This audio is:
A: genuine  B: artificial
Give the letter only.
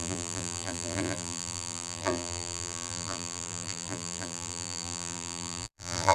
B